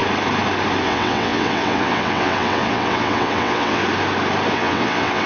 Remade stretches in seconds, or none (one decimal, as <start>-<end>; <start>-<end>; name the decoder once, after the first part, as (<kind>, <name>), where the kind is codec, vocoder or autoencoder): 0.8-3.8 (vocoder, WaveNeXt); 4.5-5.3